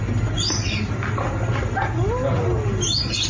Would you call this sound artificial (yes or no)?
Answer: no